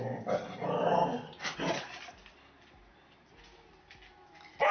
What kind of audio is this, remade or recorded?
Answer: recorded